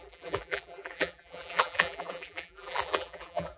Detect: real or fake fake